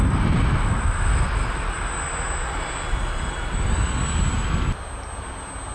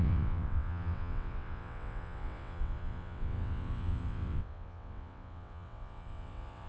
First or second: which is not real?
second